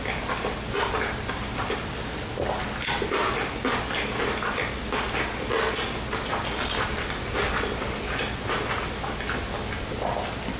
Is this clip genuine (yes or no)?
yes